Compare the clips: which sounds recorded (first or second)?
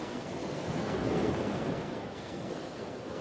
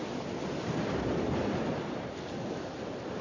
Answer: second